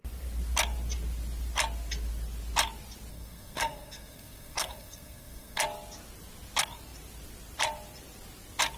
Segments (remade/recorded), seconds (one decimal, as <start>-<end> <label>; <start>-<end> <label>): 0.0-3.1 recorded; 3.1-5.6 remade; 5.6-8.8 recorded